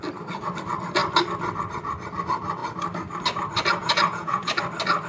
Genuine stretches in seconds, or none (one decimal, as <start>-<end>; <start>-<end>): 0.0-3.8; 4.5-5.1